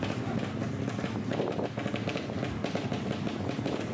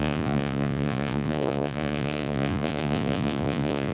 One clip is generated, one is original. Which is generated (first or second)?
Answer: second